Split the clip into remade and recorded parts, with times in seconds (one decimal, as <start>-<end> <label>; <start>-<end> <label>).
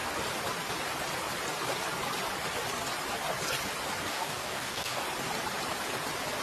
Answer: 0.0-4.1 recorded; 4.1-5.0 remade; 5.0-6.4 recorded